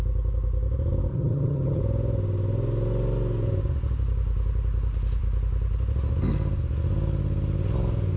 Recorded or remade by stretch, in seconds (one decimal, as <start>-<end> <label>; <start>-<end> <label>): 0.0-1.1 recorded; 1.1-1.8 remade; 1.8-8.2 recorded